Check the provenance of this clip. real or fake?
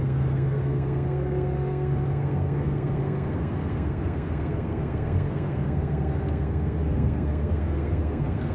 fake